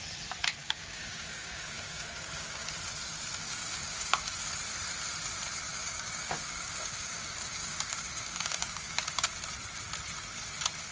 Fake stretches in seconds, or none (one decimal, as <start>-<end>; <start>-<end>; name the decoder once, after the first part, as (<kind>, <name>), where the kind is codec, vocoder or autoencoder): 0.6-2.7 (codec, DAC); 3.4-4.4; 5.7-9.3